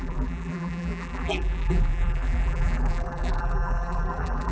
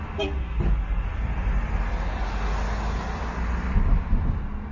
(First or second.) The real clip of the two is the second